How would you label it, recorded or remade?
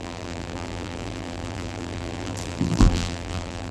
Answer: remade